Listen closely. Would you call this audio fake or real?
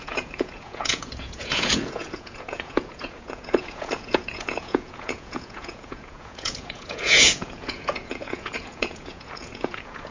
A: fake